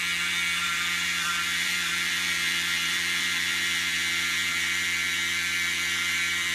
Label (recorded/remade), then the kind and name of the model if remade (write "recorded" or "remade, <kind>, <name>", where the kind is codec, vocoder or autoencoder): remade, vocoder, BigVGAN v2